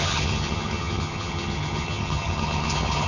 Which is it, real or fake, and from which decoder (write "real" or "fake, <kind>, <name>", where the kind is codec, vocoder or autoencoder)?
fake, vocoder, HiFi-GAN